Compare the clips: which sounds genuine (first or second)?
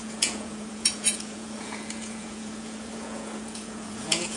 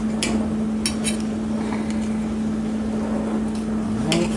second